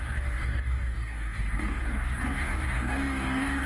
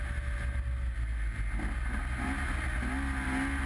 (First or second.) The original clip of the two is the second